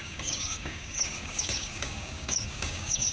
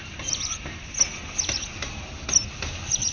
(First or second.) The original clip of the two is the second